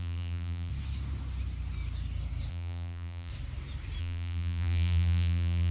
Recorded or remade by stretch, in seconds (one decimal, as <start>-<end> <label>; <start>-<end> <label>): 0.0-0.7 remade; 0.7-2.5 recorded; 2.5-3.3 remade; 3.3-4.0 recorded; 4.0-5.7 remade